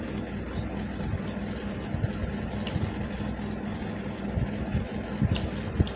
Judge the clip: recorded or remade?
recorded